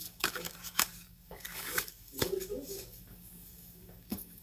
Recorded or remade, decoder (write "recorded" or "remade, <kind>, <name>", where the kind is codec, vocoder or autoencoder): remade, codec, DAC